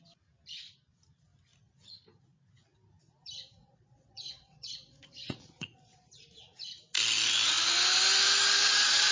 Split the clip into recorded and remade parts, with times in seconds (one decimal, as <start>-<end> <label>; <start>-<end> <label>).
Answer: 0.0-3.6 recorded; 3.6-6.1 remade; 6.1-9.1 recorded